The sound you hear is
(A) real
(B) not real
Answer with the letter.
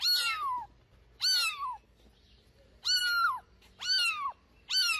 A